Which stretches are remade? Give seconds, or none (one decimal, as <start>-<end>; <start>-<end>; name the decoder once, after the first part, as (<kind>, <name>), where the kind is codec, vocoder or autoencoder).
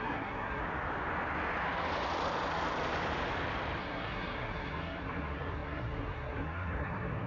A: 0.0-0.6 (codec, SNAC); 3.8-7.3